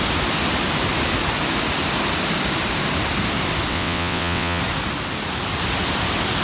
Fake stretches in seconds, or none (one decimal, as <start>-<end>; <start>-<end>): 3.7-4.6